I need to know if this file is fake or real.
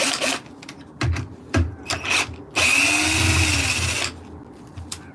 real